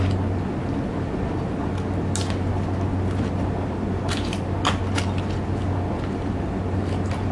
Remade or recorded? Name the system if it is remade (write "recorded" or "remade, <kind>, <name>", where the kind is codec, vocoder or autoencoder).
recorded